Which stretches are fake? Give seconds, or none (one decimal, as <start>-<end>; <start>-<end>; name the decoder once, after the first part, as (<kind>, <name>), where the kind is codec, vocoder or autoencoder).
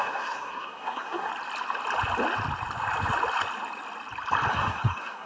0.0-1.3 (codec, SNAC); 4.5-5.3